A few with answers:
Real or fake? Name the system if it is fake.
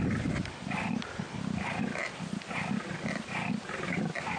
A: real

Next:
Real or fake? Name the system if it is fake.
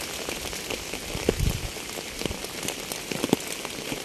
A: real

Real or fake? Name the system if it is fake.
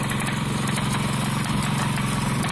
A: real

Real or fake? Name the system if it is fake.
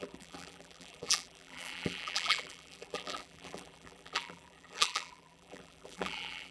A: fake, vocoder, BigVGAN v2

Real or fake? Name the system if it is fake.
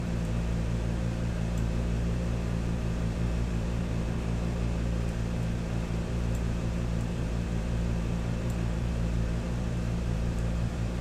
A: fake, vocoder, BigVGAN v2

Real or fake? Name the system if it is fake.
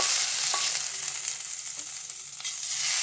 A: real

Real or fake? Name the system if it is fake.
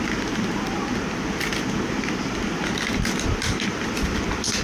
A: real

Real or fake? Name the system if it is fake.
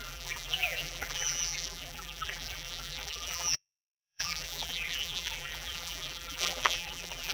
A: fake, vocoder, BigVGAN v2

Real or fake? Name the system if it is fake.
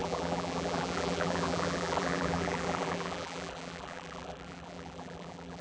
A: fake, vocoder, BigVGAN v2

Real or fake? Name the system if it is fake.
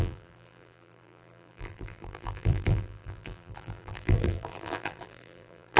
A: fake, vocoder, BigVGAN v2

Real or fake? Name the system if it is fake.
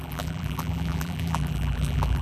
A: fake, vocoder, BigVGAN v2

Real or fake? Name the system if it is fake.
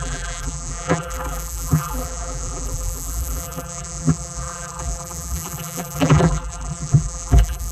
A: fake, vocoder, BigVGAN v2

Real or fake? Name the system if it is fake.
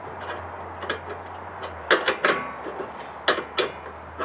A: real